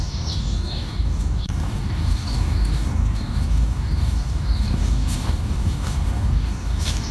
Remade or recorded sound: remade